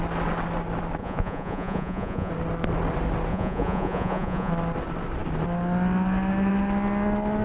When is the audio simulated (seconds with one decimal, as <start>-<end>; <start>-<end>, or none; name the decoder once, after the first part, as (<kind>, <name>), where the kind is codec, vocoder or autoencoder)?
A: 1.0-2.3 (vocoder, Vocos); 3.3-4.5